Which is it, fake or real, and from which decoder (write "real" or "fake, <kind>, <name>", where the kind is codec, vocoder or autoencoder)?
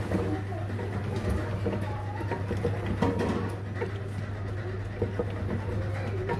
real